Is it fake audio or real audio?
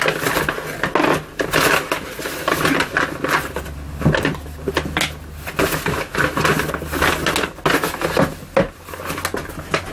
real